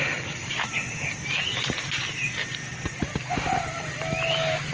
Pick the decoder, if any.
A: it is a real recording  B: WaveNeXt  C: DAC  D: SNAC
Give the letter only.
A